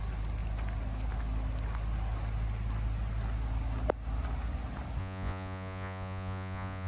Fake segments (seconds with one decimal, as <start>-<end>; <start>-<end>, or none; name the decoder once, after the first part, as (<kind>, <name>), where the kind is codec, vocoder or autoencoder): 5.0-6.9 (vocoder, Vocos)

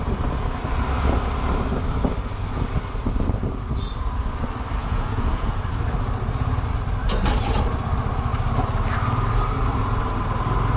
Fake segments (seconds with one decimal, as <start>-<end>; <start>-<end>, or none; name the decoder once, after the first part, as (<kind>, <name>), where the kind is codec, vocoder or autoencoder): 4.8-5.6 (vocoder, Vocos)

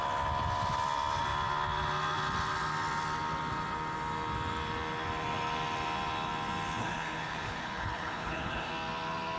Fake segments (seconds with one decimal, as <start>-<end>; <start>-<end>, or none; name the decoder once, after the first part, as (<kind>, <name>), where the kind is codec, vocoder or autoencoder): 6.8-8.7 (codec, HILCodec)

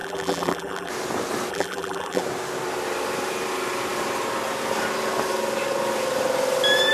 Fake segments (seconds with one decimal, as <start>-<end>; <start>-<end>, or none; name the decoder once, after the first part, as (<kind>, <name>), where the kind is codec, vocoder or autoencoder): 0.0-0.9 (vocoder, BigVGAN v2); 1.5-2.2

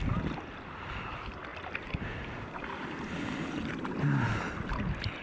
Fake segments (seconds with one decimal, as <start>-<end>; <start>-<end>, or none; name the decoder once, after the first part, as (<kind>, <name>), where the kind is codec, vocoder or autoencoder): none

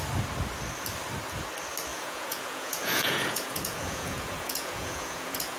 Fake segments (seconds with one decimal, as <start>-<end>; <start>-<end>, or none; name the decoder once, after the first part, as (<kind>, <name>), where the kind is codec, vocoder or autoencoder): 1.9-5.6 (vocoder, Vocos)